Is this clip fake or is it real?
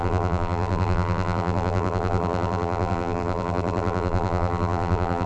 fake